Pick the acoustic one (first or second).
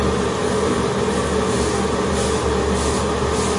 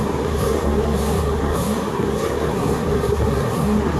first